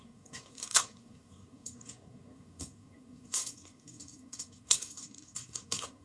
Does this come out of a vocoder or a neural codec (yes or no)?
yes